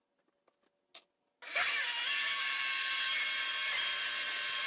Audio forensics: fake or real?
real